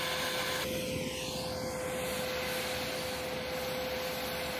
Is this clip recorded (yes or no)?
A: yes